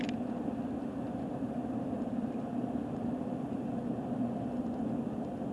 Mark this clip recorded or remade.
remade